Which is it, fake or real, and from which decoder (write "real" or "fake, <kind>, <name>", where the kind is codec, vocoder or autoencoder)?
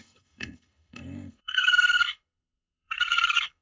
fake, codec, SNAC